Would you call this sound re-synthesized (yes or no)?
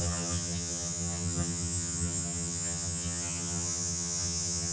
yes